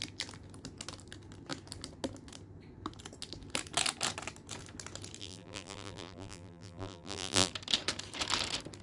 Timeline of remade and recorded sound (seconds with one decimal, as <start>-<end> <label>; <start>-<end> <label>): 0.0-5.2 recorded; 5.2-7.5 remade; 7.5-8.8 recorded